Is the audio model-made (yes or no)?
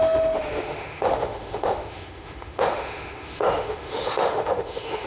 yes